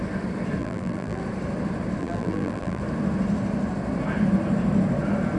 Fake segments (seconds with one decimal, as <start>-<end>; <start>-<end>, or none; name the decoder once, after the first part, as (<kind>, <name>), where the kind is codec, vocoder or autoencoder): 0.6-1.2 (vocoder, BigVGAN v2); 2.0-2.8